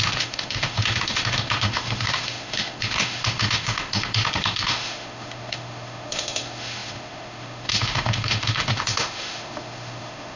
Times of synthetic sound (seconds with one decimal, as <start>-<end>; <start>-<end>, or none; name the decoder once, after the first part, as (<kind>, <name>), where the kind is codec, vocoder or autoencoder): 0.0-10.4 (autoencoder, DAC-VAE)